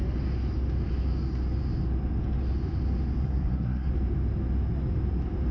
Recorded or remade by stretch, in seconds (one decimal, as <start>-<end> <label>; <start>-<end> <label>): 0.0-3.2 recorded; 3.2-3.9 remade; 3.9-5.5 recorded